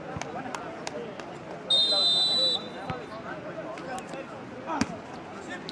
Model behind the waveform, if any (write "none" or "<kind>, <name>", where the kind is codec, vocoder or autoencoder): none